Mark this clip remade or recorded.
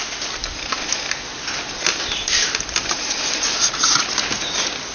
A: recorded